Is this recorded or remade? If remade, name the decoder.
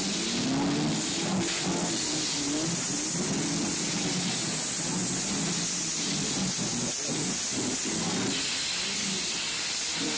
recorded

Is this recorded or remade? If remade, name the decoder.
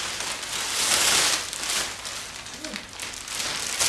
recorded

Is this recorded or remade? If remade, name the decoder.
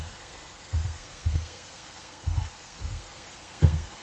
remade, codec, SNAC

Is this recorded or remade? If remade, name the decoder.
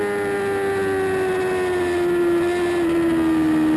recorded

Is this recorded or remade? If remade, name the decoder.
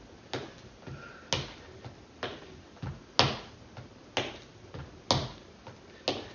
recorded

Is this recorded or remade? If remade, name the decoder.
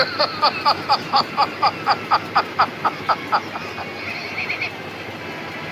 recorded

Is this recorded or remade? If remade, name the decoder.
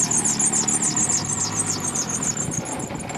recorded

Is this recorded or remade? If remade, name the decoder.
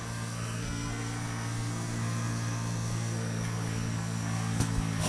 remade, codec, SNAC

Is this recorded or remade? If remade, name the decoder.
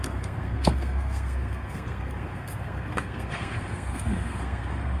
remade, codec, SNAC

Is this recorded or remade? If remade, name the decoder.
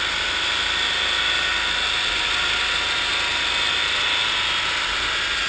recorded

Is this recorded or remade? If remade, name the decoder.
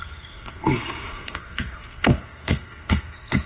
remade, codec, SNAC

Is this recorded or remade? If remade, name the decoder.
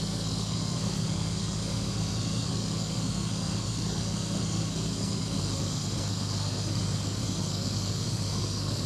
remade, codec, SNAC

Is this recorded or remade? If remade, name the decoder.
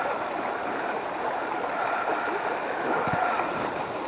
recorded